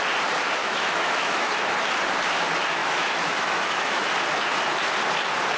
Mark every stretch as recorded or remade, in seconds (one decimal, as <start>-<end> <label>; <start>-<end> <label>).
0.0-0.6 recorded; 0.6-1.5 remade; 1.5-2.8 recorded; 2.8-4.0 remade; 4.0-5.6 recorded